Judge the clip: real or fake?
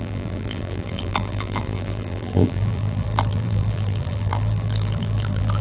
fake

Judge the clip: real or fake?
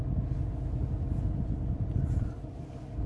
real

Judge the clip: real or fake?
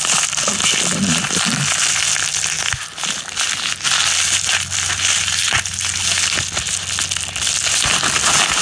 real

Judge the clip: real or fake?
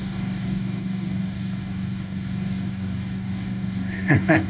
fake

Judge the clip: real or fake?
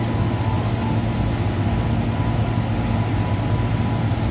real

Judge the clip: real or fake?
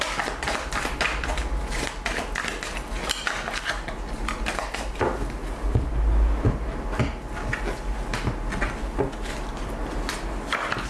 real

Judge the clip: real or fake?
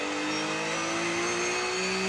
real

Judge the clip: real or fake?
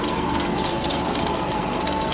fake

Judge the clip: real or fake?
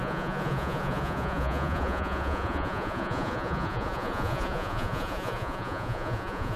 fake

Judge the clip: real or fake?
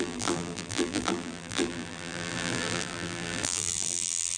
fake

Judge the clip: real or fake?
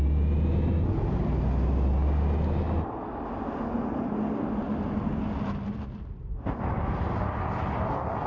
real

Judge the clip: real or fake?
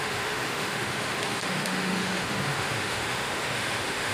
fake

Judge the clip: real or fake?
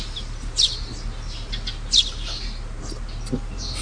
real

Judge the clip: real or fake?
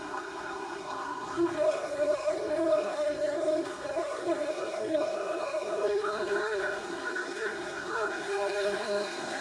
fake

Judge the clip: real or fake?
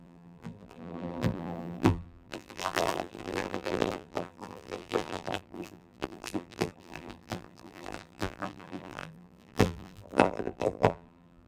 fake